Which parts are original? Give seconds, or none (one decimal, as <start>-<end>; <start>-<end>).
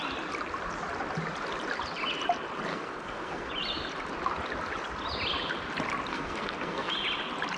0.0-2.7; 3.5-6.1; 6.9-7.6